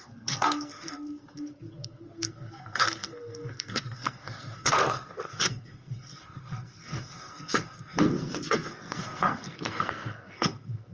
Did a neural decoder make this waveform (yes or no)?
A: yes